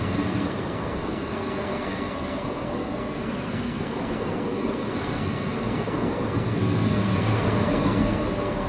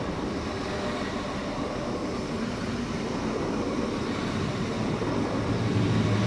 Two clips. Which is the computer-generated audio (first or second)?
first